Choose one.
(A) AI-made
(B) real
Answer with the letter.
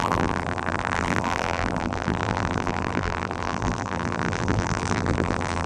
A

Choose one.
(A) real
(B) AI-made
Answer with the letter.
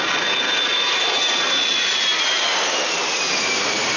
A